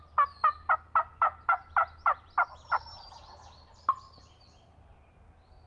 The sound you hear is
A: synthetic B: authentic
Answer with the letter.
B